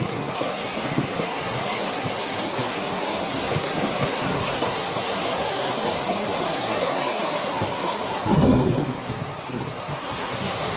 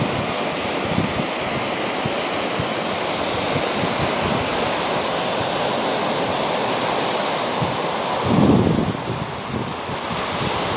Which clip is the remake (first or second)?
first